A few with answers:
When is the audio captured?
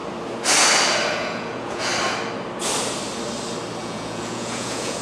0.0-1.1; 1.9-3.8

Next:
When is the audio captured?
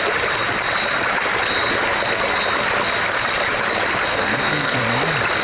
0.0-4.1; 4.8-5.4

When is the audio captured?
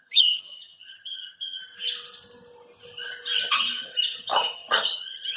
1.6-3.5